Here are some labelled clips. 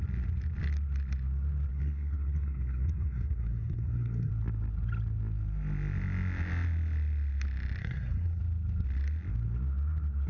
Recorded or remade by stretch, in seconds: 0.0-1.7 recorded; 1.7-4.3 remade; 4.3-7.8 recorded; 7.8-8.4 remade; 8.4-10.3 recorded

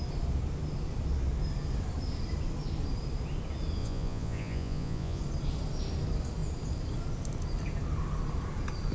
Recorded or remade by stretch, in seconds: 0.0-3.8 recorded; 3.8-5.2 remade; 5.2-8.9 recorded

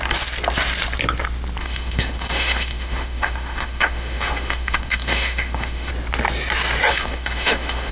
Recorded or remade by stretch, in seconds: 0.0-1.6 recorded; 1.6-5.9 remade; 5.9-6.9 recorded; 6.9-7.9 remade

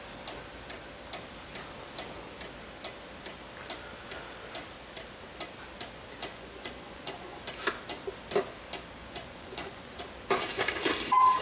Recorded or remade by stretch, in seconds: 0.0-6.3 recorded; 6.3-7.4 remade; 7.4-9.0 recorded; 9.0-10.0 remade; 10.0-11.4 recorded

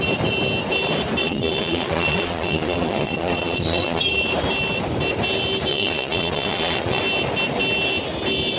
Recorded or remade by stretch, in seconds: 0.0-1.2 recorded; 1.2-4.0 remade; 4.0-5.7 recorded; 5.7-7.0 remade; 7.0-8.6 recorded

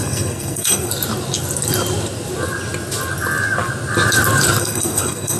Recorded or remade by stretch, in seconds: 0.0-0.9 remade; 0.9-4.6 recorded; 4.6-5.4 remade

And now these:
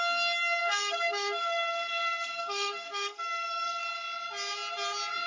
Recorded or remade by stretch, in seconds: 0.0-0.6 recorded; 0.6-3.8 remade; 3.8-5.3 recorded